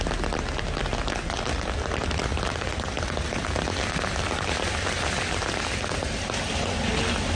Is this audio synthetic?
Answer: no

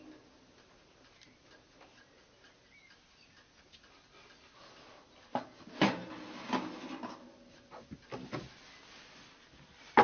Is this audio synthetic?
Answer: no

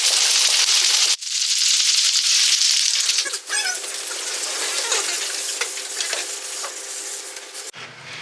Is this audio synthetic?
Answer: no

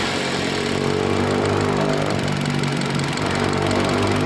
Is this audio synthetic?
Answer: no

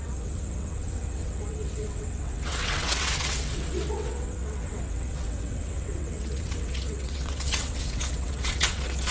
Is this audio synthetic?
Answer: yes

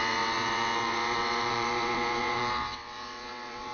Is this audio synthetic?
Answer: yes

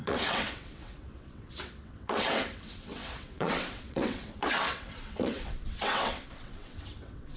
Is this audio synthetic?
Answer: yes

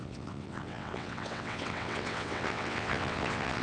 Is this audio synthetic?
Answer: yes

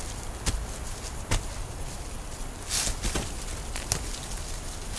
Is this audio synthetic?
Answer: no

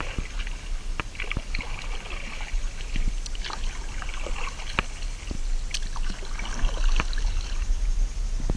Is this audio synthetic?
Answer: no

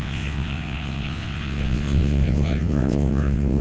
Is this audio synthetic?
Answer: yes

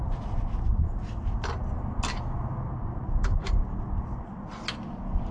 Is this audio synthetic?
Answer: no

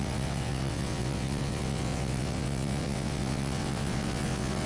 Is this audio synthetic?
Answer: yes